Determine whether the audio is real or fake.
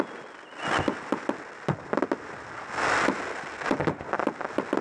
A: real